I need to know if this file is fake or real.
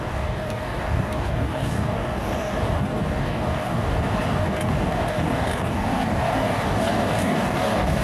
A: fake